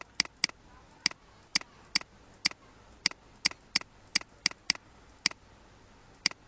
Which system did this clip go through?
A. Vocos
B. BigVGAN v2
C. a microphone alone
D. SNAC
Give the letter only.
C